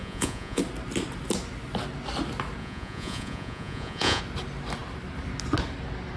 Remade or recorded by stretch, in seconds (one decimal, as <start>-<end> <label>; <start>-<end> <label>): 0.0-0.6 remade; 0.6-2.6 recorded; 2.6-4.2 remade; 4.2-6.2 recorded